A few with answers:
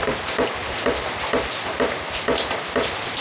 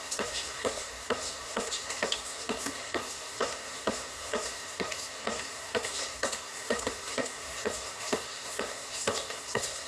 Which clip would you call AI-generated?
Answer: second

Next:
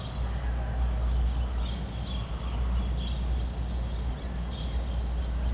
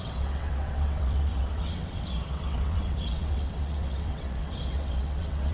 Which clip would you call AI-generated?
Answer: second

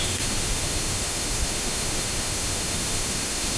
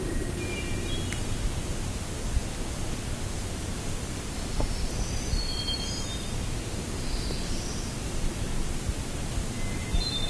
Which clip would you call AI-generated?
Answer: first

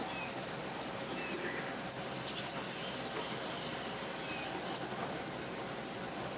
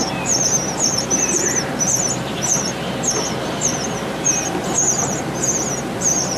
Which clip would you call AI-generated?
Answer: second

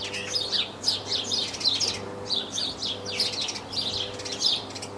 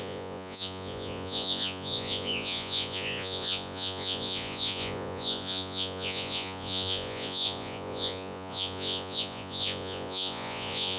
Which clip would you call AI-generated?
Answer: second